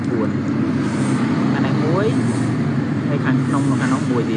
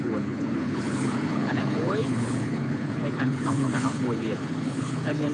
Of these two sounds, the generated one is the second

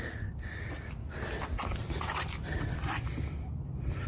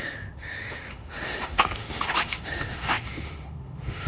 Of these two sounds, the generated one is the second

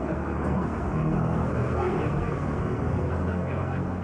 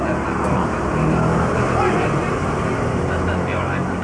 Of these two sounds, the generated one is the first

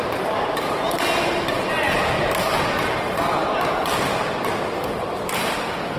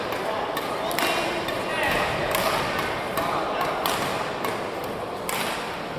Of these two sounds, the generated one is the first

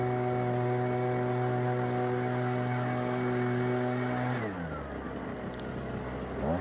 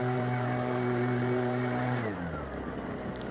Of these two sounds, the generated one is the second